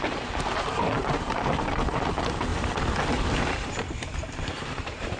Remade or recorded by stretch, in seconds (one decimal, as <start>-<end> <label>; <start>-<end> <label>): 0.0-2.5 remade; 2.5-3.5 recorded; 3.5-5.2 remade